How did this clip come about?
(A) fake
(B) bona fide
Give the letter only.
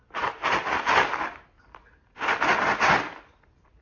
B